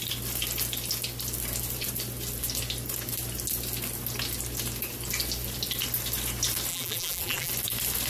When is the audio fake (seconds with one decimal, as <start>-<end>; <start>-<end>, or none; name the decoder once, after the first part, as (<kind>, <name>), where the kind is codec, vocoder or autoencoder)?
6.7-7.5 (vocoder, BigVGAN v2)